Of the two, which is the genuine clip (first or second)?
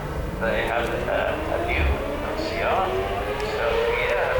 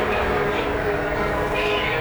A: first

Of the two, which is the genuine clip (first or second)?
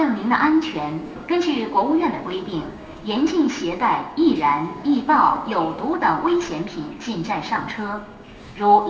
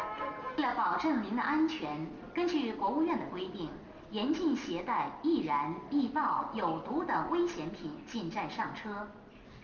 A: second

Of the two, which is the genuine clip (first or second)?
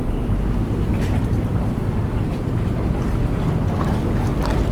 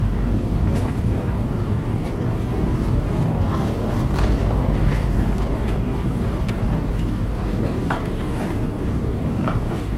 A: first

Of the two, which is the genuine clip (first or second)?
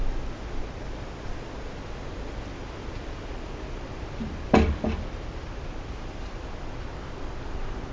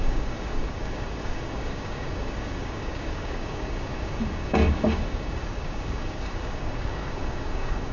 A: first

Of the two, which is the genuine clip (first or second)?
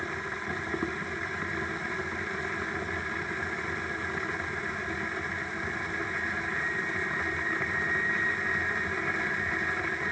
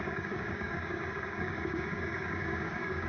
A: first